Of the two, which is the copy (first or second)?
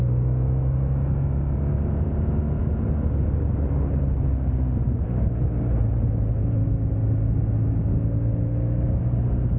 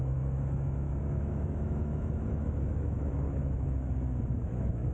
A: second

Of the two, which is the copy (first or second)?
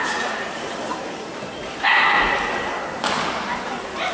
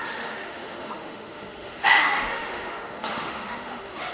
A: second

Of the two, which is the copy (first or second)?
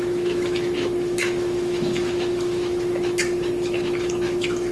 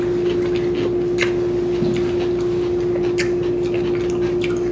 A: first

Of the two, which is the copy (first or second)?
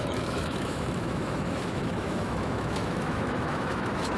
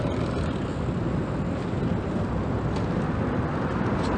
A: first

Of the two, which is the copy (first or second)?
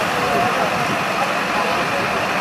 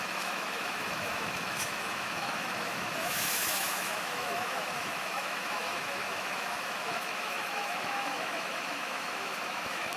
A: second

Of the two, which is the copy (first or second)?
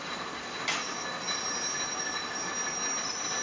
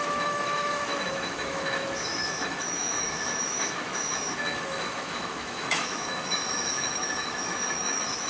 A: second